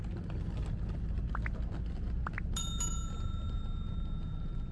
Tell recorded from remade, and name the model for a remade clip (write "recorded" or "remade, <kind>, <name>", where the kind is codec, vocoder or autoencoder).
recorded